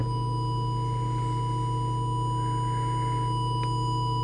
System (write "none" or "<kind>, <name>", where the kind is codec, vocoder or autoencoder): none